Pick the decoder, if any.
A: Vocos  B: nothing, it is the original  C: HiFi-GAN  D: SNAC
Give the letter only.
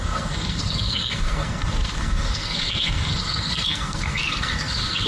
D